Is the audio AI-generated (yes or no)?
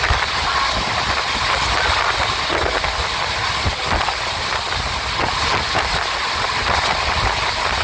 no